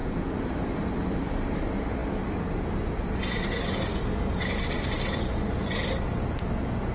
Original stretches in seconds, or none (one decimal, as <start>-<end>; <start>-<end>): 1.6-3.9; 5.4-6.9